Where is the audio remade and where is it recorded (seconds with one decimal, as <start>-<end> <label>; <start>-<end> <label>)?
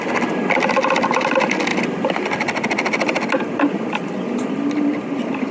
0.0-5.5 recorded